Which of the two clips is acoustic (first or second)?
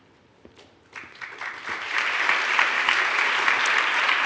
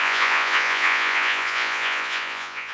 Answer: first